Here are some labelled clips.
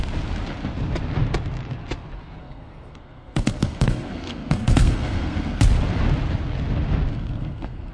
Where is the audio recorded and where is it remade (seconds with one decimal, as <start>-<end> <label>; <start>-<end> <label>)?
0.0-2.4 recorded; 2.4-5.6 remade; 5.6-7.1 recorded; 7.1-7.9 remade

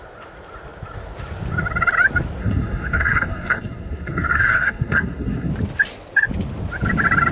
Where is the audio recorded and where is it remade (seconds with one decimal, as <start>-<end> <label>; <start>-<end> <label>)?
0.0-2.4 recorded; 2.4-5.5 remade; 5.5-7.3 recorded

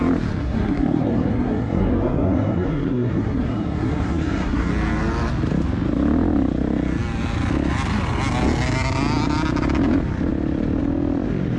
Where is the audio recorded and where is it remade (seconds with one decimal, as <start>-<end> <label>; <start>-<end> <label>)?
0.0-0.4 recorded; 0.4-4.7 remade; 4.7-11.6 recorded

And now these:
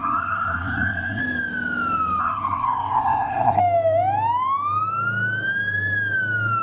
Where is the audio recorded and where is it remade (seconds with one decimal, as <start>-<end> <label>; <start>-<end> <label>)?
0.0-1.2 remade; 1.2-2.2 recorded; 2.2-3.6 remade; 3.6-6.6 recorded

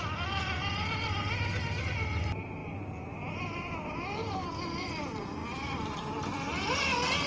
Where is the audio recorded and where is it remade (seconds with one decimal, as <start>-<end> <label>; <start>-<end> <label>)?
0.0-7.3 recorded

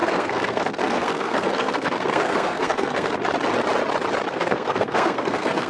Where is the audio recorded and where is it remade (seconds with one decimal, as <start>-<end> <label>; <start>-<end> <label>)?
0.0-3.1 remade; 3.1-4.3 recorded; 4.3-5.7 remade

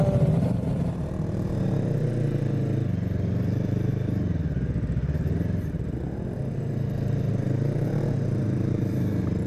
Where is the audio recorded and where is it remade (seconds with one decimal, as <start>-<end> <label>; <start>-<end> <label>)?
0.0-9.5 recorded

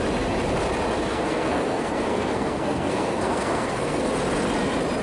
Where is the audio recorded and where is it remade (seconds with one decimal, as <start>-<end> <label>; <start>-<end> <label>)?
0.0-1.1 recorded; 1.1-4.1 remade; 4.1-5.0 recorded